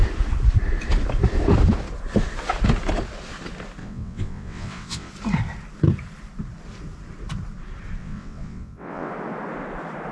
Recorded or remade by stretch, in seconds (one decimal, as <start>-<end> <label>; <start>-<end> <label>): 0.0-3.8 recorded; 3.8-5.1 remade; 5.1-8.0 recorded; 8.0-9.1 remade; 9.1-10.1 recorded